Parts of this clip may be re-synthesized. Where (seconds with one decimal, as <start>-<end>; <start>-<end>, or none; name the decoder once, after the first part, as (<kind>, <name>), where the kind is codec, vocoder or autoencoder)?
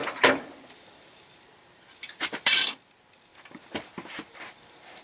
0.0-2.6 (vocoder, BigVGAN v2); 3.3-5.0